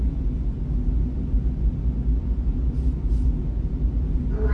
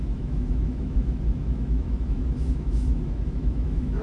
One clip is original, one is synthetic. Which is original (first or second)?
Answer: first